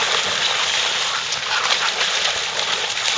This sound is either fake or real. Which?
real